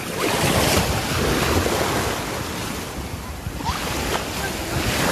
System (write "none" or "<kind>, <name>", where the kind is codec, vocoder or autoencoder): none